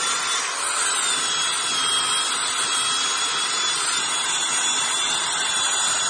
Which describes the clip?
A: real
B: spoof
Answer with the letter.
A